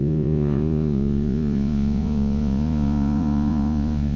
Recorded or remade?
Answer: remade